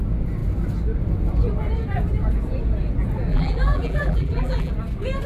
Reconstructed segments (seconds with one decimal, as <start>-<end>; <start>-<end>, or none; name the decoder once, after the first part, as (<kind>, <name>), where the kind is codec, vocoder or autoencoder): 3.3-4.7 (vocoder, BigVGAN v2)